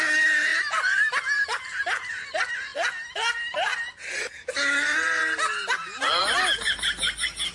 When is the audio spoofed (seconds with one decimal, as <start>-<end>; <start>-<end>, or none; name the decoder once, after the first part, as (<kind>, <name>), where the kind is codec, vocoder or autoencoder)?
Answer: none